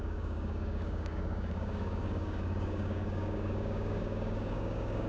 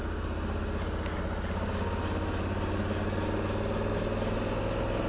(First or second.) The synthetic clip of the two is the first